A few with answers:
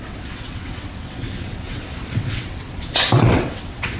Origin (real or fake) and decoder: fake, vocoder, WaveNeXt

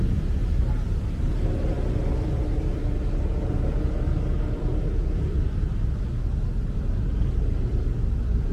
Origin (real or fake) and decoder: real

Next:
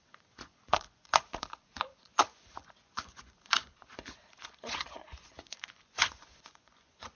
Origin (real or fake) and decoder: fake, vocoder, Vocos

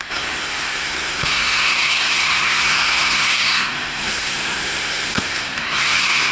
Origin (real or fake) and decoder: fake, codec, SNAC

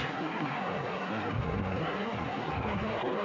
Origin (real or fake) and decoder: fake, codec, SNAC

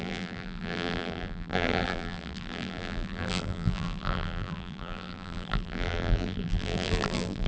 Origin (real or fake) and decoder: fake, vocoder, BigVGAN v2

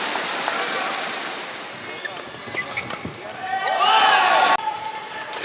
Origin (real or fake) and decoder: real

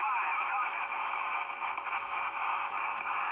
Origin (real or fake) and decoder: fake, autoencoder, DAC-VAE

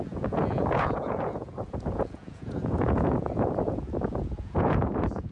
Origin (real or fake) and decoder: fake, vocoder, Vocos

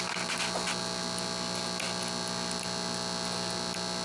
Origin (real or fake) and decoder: real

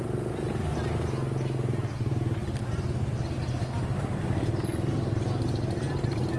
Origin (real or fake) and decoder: real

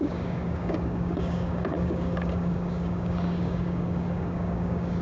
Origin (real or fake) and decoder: fake, codec, DAC